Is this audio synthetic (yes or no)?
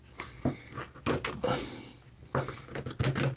no